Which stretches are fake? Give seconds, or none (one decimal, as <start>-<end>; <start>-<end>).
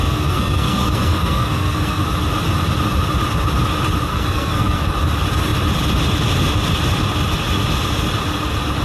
0.0-2.0; 4.1-4.8